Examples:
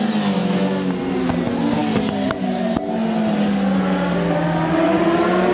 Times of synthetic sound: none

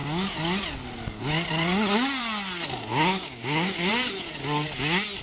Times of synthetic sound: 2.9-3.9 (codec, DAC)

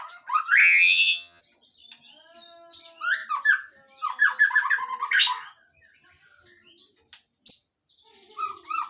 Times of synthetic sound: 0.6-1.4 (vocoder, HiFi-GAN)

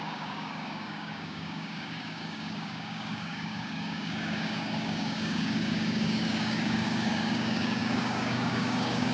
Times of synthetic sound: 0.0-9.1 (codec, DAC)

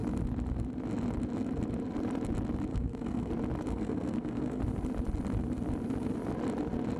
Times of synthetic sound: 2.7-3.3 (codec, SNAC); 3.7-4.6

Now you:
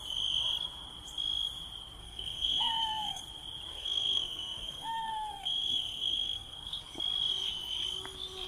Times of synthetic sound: 2.0-3.2 (codec, SNAC); 3.7-6.8

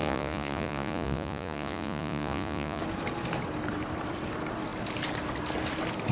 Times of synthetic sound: 0.0-2.8 (vocoder, Vocos)

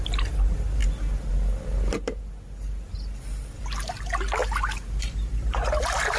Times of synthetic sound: none